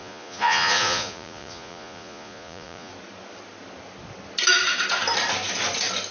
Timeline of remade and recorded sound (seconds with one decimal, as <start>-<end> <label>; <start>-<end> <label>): 0.0-2.9 remade; 2.9-6.1 recorded